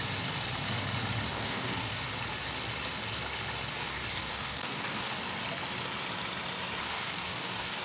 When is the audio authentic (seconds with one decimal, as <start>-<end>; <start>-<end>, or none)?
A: 0.0-1.3; 2.0-3.7; 5.2-6.8